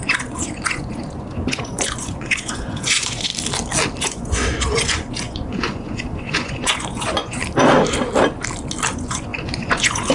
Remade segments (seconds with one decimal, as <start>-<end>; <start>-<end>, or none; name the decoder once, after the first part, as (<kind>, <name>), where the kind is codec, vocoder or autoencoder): 0.0-3.3 (vocoder, Vocos); 4.0-7.4; 8.9-10.1